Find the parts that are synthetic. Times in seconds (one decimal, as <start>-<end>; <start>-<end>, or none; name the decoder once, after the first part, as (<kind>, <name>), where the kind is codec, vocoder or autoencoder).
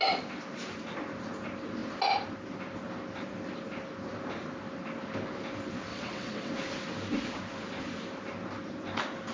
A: 5.9-6.5 (vocoder, WaveNeXt)